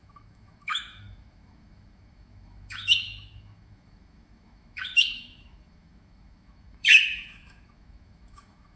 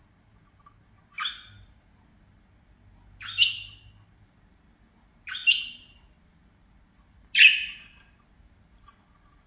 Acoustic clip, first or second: second